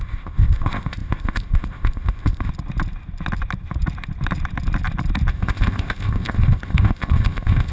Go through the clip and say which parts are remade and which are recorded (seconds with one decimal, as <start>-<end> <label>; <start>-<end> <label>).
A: 0.0-2.5 remade; 2.5-5.3 recorded; 5.3-7.7 remade